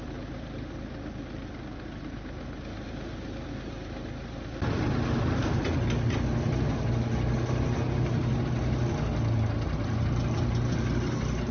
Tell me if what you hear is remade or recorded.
recorded